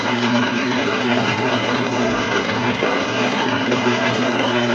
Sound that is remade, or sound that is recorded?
remade